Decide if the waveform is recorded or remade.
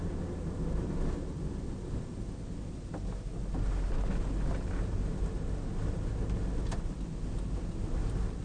recorded